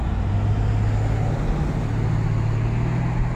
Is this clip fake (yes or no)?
no